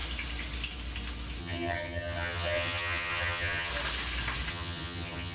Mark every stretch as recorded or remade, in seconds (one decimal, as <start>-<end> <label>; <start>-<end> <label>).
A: 0.0-1.4 recorded; 1.4-3.7 remade; 3.7-4.5 recorded; 4.5-5.3 remade

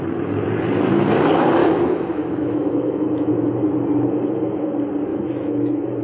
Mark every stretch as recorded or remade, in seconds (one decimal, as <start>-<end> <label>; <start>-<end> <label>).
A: 0.0-1.6 recorded; 1.6-3.3 remade; 3.3-5.1 recorded; 5.1-6.0 remade